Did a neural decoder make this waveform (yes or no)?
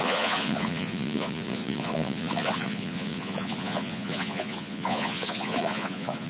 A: yes